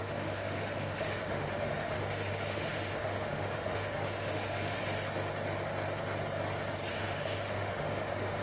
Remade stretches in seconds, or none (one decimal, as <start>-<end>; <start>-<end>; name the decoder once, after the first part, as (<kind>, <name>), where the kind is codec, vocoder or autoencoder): 0.0-4.8 (autoencoder, DAC-VAE); 6.9-8.4